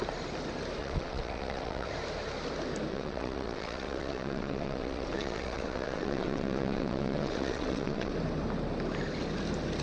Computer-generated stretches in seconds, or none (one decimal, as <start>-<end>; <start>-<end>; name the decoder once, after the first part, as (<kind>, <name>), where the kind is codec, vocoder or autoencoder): 0.8-1.9 (vocoder, WaveNeXt); 2.9-8.1